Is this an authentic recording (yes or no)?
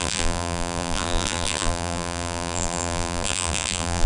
no